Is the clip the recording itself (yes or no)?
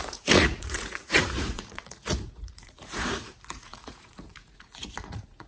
no